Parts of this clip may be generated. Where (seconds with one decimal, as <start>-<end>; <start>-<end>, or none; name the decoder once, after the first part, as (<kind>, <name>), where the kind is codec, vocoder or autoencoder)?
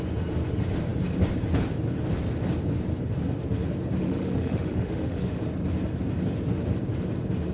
4.0-5.4 (autoencoder, DAC-VAE)